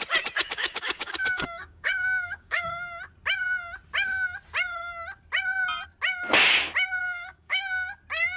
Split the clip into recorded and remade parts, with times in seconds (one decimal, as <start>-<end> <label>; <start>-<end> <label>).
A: 0.0-0.4 recorded; 0.4-2.7 remade; 2.7-7.0 recorded; 7.0-8.0 remade; 8.0-8.4 recorded